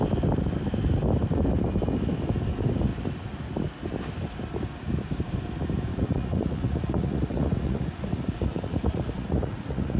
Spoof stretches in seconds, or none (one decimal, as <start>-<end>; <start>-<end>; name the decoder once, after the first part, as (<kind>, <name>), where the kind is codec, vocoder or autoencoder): 5.9-10.0 (vocoder, Vocos)